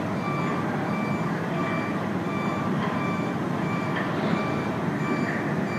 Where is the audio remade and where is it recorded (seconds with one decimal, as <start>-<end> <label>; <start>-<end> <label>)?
0.0-0.5 recorded; 0.5-1.1 remade; 1.1-1.6 recorded; 1.6-5.1 remade; 5.1-5.8 recorded